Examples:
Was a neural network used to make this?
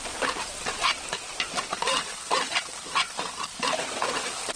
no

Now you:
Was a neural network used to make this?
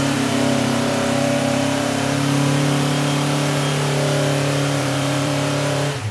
yes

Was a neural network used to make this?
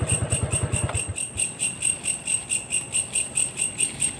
no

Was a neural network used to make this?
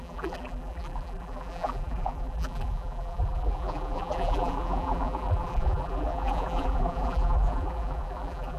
yes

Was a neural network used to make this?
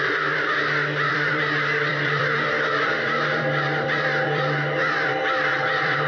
yes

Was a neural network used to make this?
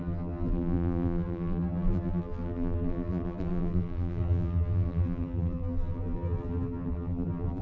yes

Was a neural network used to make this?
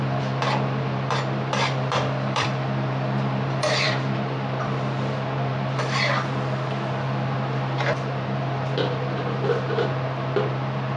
yes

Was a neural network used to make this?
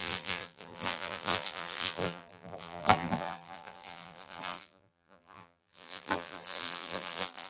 yes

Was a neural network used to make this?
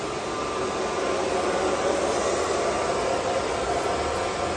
no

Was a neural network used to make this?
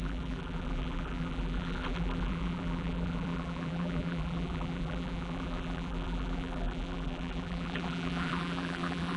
yes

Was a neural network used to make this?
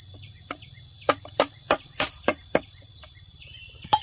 yes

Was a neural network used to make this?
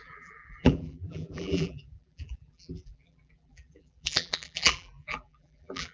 yes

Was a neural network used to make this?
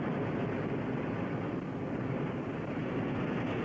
no